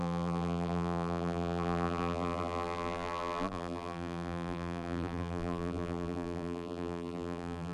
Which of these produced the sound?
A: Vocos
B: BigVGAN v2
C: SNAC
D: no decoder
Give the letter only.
B